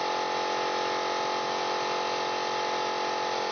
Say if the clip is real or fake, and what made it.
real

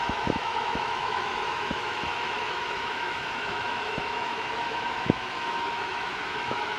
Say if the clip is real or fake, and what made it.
fake, autoencoder, DAC-VAE